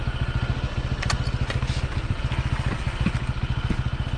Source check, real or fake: real